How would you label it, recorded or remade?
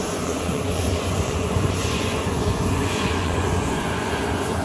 remade